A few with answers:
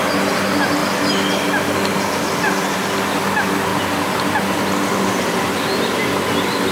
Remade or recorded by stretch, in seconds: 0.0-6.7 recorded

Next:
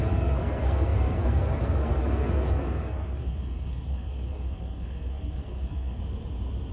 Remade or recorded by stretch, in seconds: 0.0-6.0 remade; 6.0-6.7 recorded

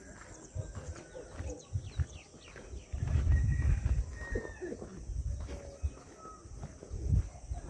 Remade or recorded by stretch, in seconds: 0.0-7.7 recorded

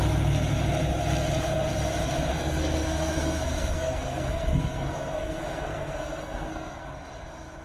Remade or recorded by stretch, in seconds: 0.0-2.3 recorded; 2.3-6.9 remade; 6.9-7.6 recorded

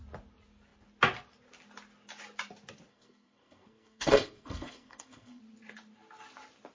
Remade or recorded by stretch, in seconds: 0.0-2.9 recorded; 2.9-5.4 remade; 5.4-6.7 recorded

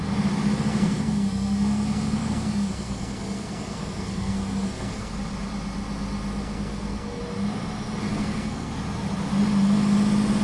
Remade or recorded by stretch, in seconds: 0.0-0.7 recorded; 0.7-5.1 remade; 5.1-6.4 recorded; 6.4-7.2 remade; 7.2-8.1 recorded; 8.1-8.7 remade; 8.7-10.4 recorded

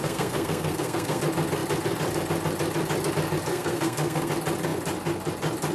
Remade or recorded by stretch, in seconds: 0.0-1.2 remade; 1.2-3.5 recorded; 3.5-4.3 remade; 4.3-5.7 recorded